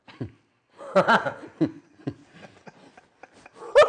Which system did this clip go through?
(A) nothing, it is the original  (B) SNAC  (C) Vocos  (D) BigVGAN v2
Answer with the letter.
A